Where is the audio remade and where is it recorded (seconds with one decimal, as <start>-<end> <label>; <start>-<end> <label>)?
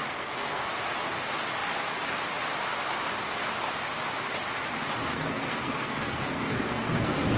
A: 0.0-0.7 remade; 0.7-5.1 recorded; 5.1-7.4 remade